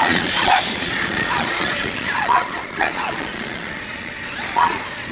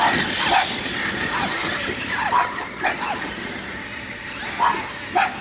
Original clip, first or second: second